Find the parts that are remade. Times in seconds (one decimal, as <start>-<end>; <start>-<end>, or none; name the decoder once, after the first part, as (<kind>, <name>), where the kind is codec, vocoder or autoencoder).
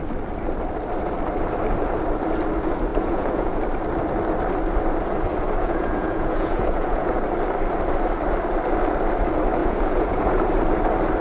2.9-3.6 (vocoder, Vocos); 5.6-7.1; 9.6-10.5